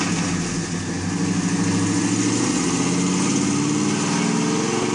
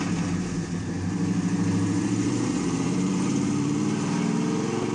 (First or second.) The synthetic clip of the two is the second